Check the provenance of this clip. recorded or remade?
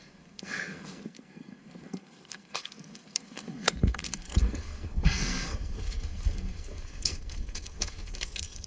remade